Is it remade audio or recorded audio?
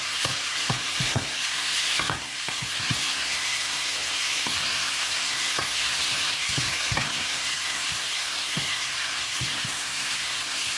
remade